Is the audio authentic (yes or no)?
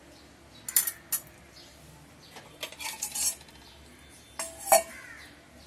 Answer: yes